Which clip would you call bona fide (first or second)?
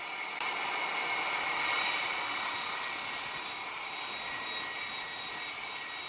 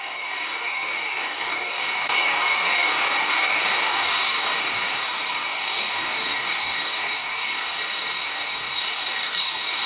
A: first